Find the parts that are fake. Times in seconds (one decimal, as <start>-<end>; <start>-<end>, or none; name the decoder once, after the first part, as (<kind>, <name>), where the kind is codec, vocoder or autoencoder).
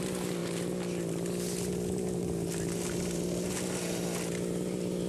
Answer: none